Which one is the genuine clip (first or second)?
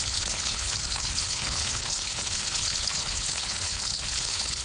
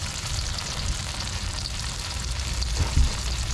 second